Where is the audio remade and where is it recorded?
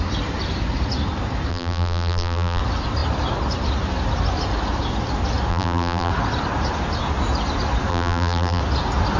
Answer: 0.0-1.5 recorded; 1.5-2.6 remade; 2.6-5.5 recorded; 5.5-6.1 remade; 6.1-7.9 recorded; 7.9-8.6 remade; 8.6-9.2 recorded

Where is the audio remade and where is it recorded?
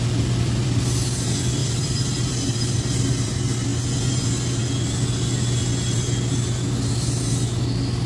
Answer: 0.0-3.7 remade; 3.7-8.1 recorded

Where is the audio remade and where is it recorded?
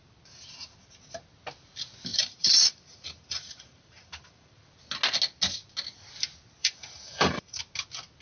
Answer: 0.0-2.1 recorded; 2.1-4.5 remade; 4.5-6.6 recorded; 6.6-7.6 remade; 7.6-8.2 recorded